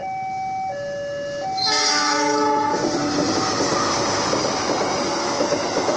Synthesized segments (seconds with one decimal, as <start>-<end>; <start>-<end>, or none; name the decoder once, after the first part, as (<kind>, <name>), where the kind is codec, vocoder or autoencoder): 1.7-2.8 (autoencoder, DAC-VAE); 5.1-6.0